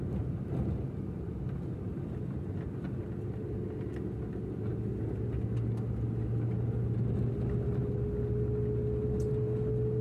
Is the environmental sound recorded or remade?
recorded